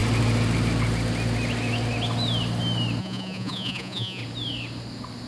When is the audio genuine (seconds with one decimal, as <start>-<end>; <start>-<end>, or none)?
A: 0.0-3.0; 4.2-5.3